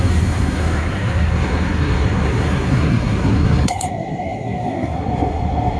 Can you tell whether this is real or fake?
fake